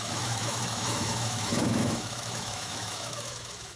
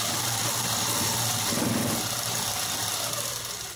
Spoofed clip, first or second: first